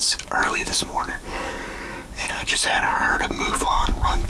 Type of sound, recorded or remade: remade